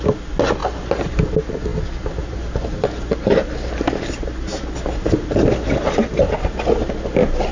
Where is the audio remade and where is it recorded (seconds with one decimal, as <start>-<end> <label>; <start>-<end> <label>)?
0.0-7.5 recorded